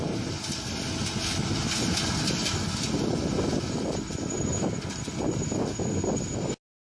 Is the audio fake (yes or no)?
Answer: no